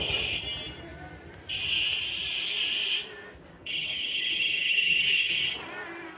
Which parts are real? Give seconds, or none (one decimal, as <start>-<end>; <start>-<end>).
0.0-3.5; 5.4-6.2